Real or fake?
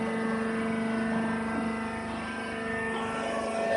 real